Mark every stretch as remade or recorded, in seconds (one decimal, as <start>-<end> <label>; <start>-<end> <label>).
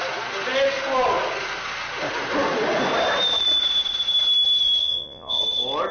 0.0-4.8 recorded; 4.8-5.4 remade; 5.4-5.9 recorded